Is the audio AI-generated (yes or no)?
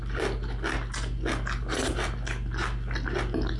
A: no